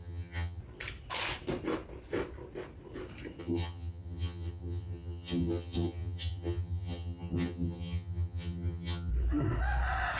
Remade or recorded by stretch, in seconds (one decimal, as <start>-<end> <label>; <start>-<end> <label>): 0.0-0.6 remade; 0.6-3.4 recorded; 3.4-9.1 remade; 9.1-10.2 recorded